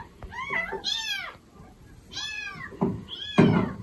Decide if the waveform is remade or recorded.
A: recorded